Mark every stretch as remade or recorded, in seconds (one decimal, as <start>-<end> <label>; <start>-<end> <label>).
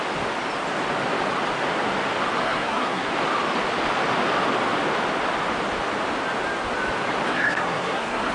0.0-2.4 recorded; 2.4-3.1 remade; 3.1-7.3 recorded; 7.3-8.3 remade